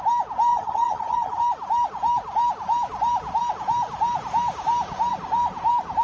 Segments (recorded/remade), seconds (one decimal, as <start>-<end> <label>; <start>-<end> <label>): 0.0-0.5 recorded; 0.5-1.4 remade; 1.4-6.0 recorded